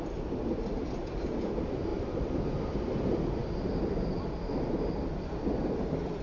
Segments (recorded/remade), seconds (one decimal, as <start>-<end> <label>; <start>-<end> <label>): 0.0-3.4 remade; 3.4-5.2 recorded; 5.2-6.2 remade